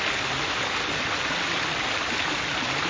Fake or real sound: real